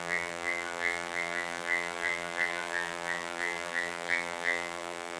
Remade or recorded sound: remade